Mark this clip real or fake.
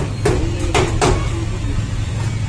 real